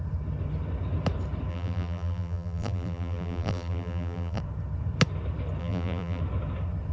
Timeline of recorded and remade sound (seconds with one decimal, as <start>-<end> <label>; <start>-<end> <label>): 0.0-1.5 recorded; 1.5-4.4 remade; 4.4-5.6 recorded; 5.6-6.2 remade; 6.2-6.9 recorded